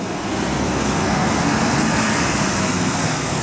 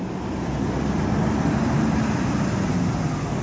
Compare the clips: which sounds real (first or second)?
second